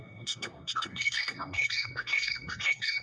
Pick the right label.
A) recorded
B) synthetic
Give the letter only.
B